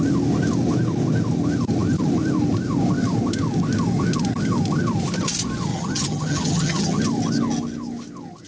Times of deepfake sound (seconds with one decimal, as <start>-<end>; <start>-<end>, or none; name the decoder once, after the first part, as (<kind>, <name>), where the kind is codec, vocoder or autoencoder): 5.7-7.0 (vocoder, HiFi-GAN)